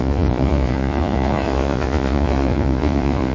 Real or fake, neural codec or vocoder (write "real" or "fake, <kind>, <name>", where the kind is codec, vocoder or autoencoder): fake, vocoder, Vocos